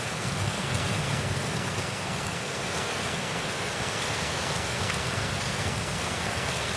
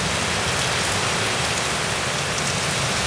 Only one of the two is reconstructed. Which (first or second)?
first